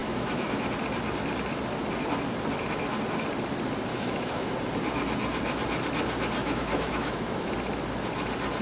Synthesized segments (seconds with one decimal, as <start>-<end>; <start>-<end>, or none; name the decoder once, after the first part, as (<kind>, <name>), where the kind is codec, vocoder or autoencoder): 0.0-0.6 (autoencoder, DAC-VAE); 3.9-4.5; 6.4-7.5